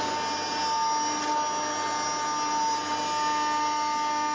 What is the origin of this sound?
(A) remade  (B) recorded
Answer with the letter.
B